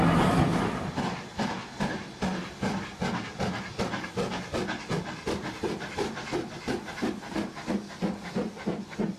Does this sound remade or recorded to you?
recorded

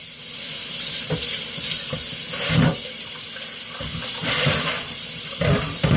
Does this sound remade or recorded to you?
remade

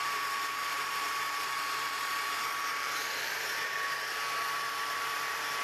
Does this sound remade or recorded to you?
remade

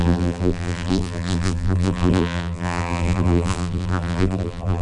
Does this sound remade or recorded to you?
remade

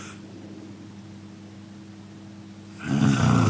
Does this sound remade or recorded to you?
recorded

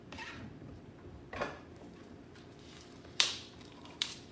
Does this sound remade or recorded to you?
remade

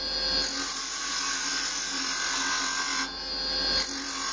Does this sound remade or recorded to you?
recorded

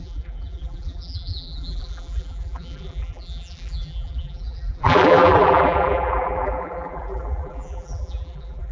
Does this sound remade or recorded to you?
remade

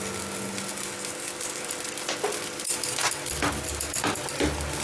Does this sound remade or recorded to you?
recorded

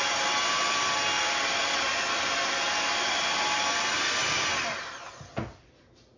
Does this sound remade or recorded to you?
recorded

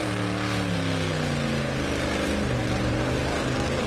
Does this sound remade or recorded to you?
recorded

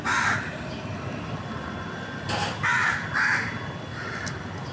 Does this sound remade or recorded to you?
recorded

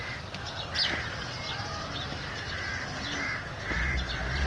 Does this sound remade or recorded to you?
recorded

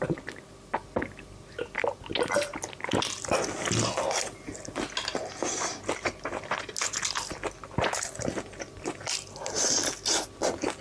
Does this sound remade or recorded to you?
recorded